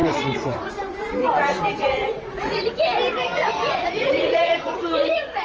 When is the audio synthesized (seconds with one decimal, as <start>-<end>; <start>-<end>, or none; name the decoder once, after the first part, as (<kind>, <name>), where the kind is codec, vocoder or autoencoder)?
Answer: 0.0-0.7 (vocoder, Vocos); 1.2-2.7; 3.3-5.4